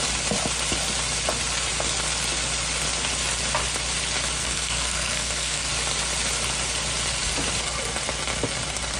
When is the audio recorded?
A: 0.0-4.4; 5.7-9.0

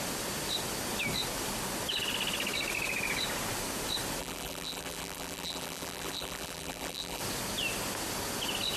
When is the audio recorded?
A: 0.0-4.2; 7.2-8.8